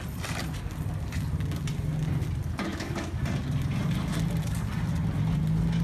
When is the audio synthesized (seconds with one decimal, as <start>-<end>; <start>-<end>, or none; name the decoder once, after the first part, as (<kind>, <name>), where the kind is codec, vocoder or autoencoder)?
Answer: 2.7-3.2 (codec, DAC)